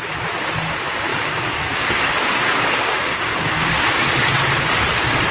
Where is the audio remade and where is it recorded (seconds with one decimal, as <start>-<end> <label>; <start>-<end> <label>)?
0.0-1.1 recorded; 1.1-3.7 remade; 3.7-5.3 recorded